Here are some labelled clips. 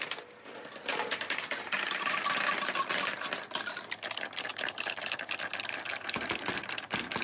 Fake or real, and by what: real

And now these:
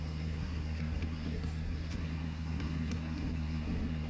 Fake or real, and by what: fake, codec, SNAC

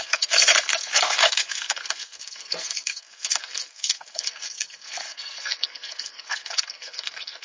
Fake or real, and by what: fake, codec, SNAC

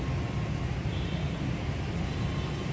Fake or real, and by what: real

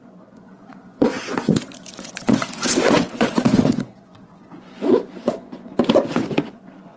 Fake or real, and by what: fake, vocoder, Vocos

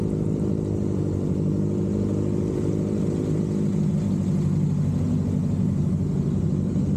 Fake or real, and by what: real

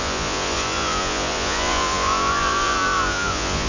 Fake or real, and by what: fake, vocoder, Vocos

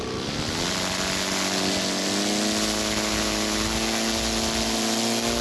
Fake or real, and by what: real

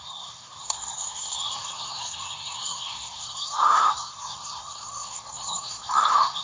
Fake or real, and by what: fake, codec, SNAC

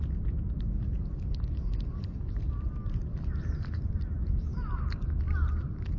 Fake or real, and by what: real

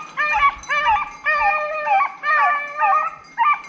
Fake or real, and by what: real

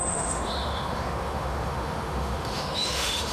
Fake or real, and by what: fake, autoencoder, DAC-VAE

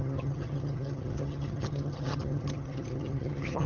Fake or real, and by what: fake, vocoder, HiFi-GAN